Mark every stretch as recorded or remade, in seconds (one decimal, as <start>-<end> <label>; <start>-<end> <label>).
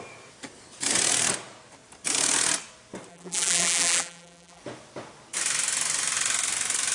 0.0-3.1 recorded; 3.1-4.6 remade; 4.6-6.9 recorded